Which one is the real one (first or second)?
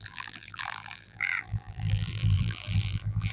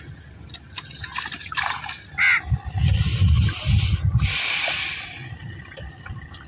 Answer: second